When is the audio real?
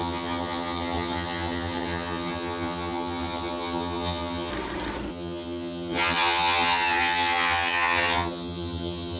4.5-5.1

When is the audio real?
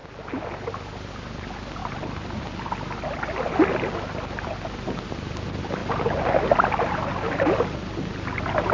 0.0-1.8; 2.4-8.7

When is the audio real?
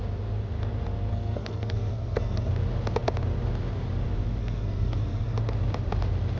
0.0-1.1; 2.5-4.4; 5.4-6.4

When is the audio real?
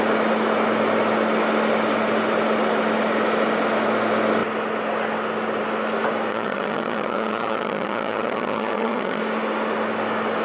0.0-6.3; 9.2-10.4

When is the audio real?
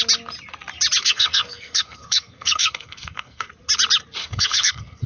0.0-1.0; 3.5-4.2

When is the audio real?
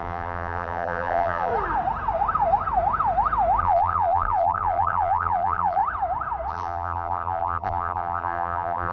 1.5-3.6; 5.8-6.5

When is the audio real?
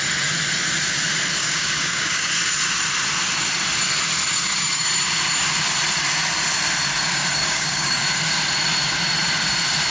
0.0-1.4; 2.3-4.2; 4.9-7.4; 8.0-9.9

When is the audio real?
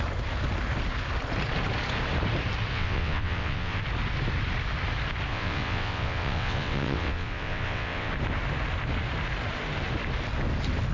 0.0-2.7; 3.8-5.3; 8.1-10.9